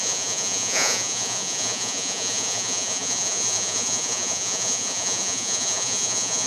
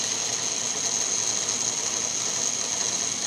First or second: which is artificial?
first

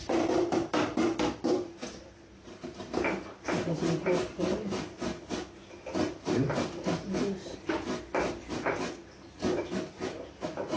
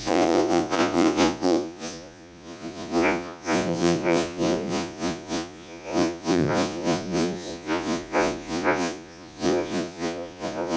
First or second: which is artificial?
second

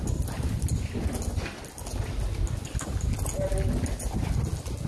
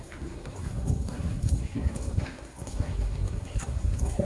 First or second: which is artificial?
second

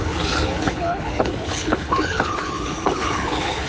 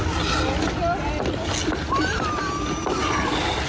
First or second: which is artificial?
first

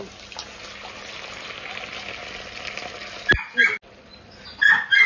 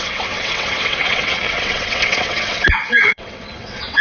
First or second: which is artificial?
second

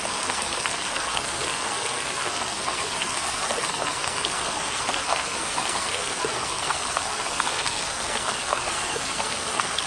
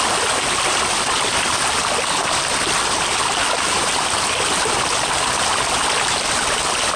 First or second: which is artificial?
first